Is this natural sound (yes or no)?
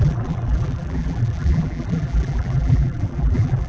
no